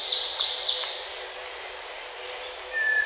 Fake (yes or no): no